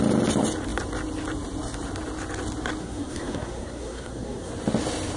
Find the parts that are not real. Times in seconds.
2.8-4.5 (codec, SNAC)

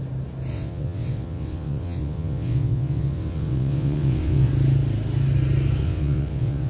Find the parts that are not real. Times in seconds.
0.5-4.5 (vocoder, WaveNeXt); 5.8-6.7